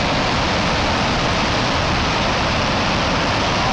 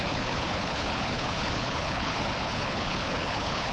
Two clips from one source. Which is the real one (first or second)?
first